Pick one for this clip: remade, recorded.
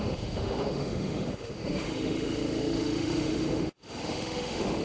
remade